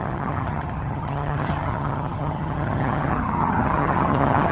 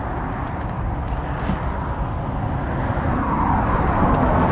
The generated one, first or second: first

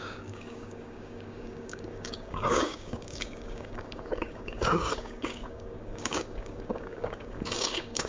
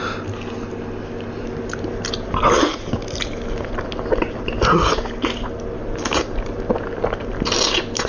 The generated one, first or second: first